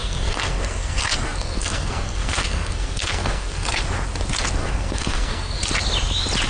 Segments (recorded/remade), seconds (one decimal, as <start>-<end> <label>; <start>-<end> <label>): 0.0-3.8 remade; 3.8-4.6 recorded; 4.6-5.6 remade; 5.6-6.5 recorded